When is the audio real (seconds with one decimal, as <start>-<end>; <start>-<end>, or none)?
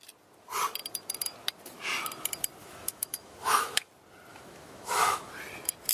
0.0-2.6; 3.9-4.3; 5.3-5.9